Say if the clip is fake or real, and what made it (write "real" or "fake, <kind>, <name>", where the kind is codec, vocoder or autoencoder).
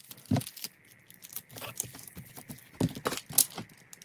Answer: real